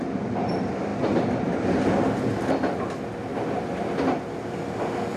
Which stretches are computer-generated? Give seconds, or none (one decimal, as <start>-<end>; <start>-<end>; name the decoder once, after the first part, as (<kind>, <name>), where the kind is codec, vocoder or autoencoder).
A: none